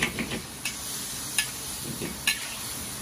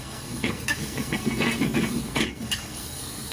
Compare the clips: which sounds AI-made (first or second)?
second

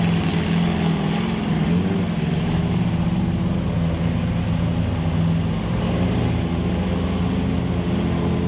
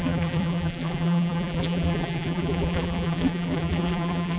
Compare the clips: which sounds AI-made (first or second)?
second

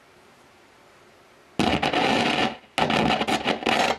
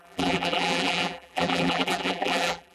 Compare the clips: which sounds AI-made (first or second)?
second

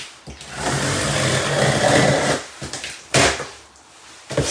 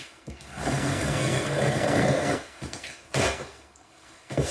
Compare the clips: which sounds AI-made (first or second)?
second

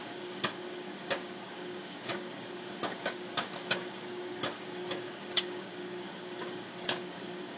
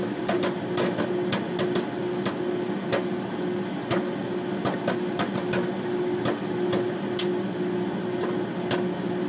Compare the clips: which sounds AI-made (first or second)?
first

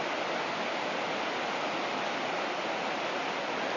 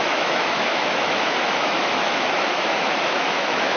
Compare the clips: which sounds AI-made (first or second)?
second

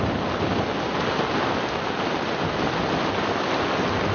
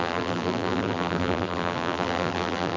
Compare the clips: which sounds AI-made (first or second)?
second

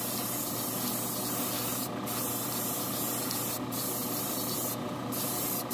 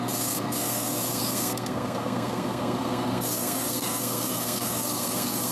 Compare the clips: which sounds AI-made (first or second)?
second